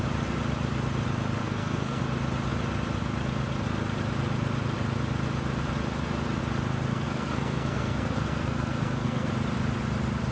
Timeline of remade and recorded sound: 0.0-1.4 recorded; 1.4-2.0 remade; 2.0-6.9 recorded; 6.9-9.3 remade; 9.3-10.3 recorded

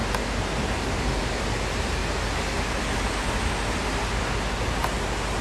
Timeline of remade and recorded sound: 0.0-5.4 recorded